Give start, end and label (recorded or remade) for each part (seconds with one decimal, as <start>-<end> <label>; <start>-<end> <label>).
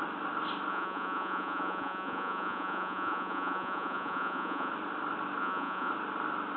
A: 0.0-0.7 recorded; 0.7-4.7 remade; 4.7-5.4 recorded; 5.4-5.9 remade; 5.9-6.6 recorded